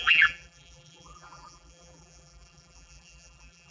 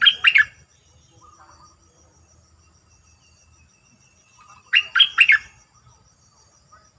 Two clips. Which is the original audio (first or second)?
second